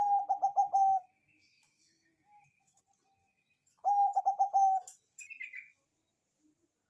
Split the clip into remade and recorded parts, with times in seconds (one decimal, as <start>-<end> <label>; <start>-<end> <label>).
0.0-0.6 recorded; 0.6-2.8 remade; 2.8-3.2 recorded; 3.2-4.2 remade; 4.2-6.9 recorded